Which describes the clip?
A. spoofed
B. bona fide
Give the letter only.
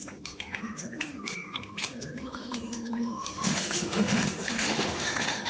A